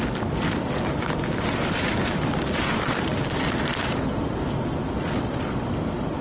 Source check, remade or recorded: recorded